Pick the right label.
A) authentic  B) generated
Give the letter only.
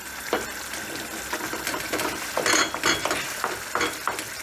A